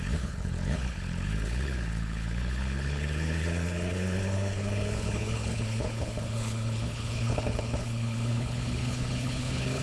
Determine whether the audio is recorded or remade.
remade